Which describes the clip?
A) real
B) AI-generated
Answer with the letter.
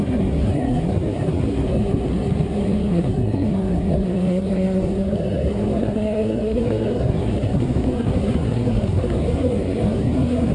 B